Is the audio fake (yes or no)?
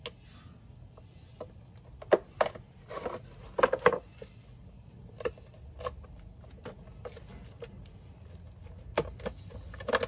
no